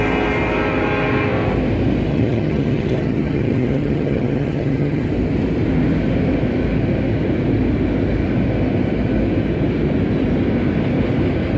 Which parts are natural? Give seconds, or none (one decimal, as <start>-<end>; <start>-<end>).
0.0-2.1; 5.1-11.6